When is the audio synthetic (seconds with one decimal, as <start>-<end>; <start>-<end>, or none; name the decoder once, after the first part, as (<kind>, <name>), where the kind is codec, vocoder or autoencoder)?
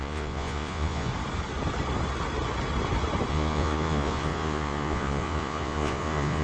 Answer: 0.0-1.1 (vocoder, Vocos); 3.3-6.4